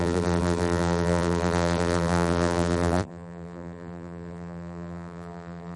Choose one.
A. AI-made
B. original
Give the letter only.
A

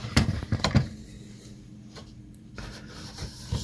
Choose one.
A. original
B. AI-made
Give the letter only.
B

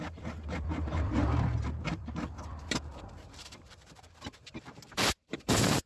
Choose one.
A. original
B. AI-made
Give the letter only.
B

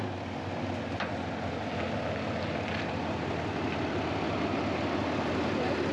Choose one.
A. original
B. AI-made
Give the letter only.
A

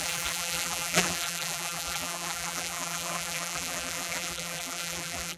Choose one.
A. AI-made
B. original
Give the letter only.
A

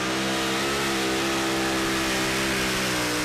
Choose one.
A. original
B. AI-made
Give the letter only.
A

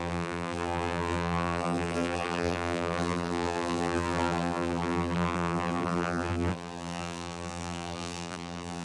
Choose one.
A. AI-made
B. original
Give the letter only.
A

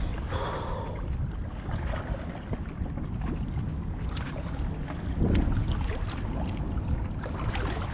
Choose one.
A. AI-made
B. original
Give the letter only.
B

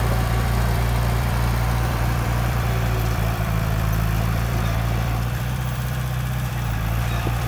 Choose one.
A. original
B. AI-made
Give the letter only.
B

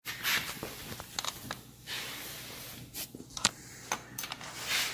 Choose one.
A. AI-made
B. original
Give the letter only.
B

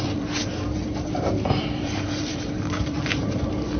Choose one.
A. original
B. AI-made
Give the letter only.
B